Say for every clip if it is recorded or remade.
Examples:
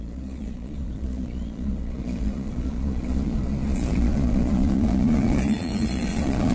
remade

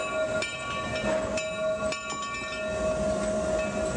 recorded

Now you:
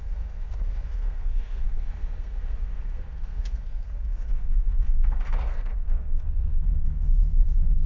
remade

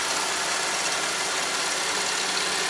recorded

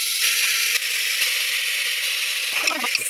recorded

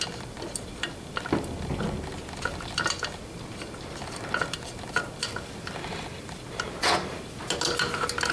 recorded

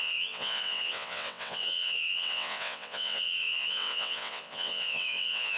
remade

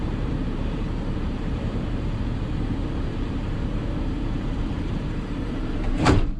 remade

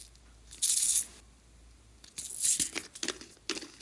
recorded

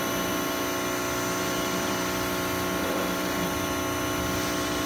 recorded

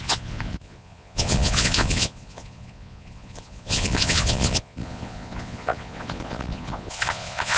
remade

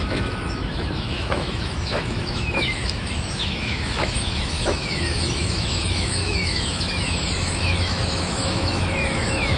remade